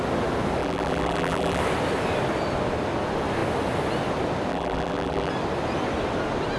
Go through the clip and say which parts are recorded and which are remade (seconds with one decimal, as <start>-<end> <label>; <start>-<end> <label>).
0.0-0.6 recorded; 0.6-1.6 remade; 1.6-4.5 recorded; 4.5-5.3 remade; 5.3-6.6 recorded